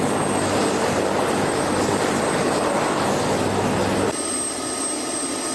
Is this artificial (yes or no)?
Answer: no